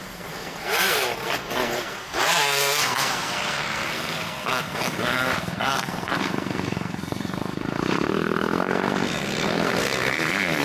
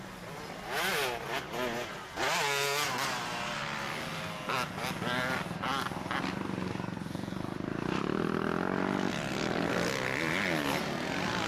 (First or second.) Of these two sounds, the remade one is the first